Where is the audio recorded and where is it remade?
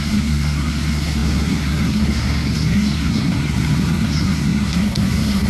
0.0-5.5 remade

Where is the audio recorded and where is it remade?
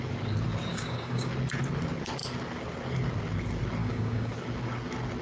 0.0-0.7 recorded; 0.7-1.3 remade; 1.3-3.8 recorded; 3.8-4.3 remade; 4.3-5.2 recorded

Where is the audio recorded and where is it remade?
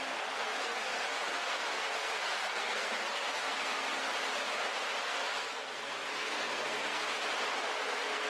0.0-4.1 remade; 4.1-5.0 recorded; 5.0-7.0 remade; 7.0-7.7 recorded; 7.7-8.3 remade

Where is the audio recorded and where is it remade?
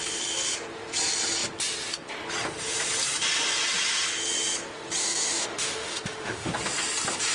0.0-5.0 recorded; 5.0-6.5 remade; 6.5-7.3 recorded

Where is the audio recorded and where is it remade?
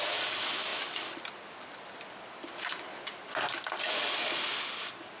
0.0-5.2 recorded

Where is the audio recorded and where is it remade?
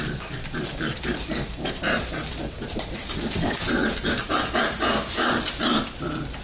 0.0-6.4 recorded